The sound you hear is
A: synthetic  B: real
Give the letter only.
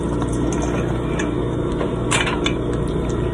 B